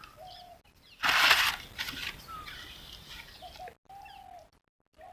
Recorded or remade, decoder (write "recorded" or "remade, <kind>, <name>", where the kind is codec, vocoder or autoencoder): recorded